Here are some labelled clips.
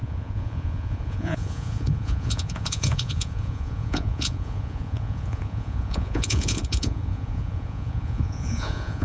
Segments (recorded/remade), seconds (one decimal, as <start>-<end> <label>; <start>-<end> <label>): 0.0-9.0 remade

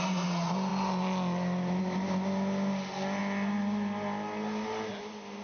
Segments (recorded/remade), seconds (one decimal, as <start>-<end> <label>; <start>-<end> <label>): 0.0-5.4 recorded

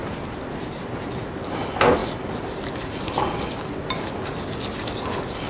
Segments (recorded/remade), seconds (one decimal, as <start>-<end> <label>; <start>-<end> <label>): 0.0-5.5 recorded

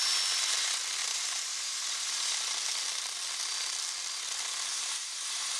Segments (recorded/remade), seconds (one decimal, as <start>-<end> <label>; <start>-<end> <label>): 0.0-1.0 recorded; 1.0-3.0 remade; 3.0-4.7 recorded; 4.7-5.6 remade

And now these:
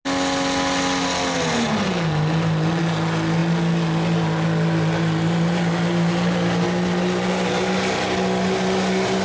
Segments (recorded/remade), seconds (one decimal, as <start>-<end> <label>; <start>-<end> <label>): 0.0-9.2 recorded

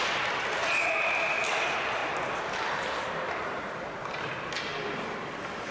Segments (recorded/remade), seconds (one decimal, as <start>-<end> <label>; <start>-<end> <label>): 0.0-5.7 recorded

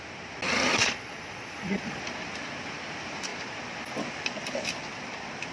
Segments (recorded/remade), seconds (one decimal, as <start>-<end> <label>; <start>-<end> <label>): 0.0-0.7 recorded; 0.7-2.0 remade; 2.0-5.5 recorded